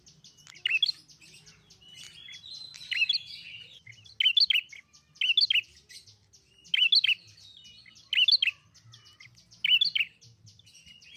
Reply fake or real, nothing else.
real